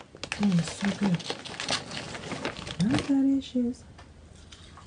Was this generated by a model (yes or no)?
no